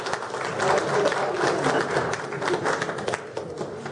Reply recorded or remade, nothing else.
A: recorded